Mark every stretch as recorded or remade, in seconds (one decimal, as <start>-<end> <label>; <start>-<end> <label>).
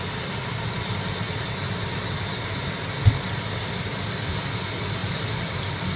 0.0-5.0 recorded; 5.0-5.5 remade; 5.5-6.0 recorded